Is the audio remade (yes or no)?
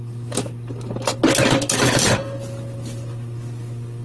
no